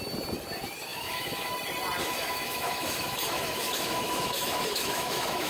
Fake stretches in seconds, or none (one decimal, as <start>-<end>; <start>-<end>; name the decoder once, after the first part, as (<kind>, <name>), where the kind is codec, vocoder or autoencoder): 0.9-1.5 (autoencoder, DAC-VAE); 2.0-5.5